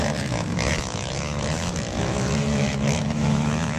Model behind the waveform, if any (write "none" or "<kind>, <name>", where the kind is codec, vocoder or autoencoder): autoencoder, DAC-VAE